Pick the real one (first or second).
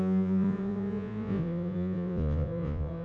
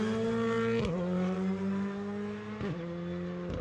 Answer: second